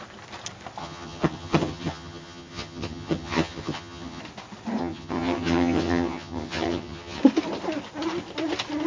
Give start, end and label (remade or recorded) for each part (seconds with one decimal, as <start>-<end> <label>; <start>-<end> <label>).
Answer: 0.0-0.8 recorded; 0.8-4.2 remade; 4.2-4.8 recorded; 4.8-7.2 remade; 7.2-8.9 recorded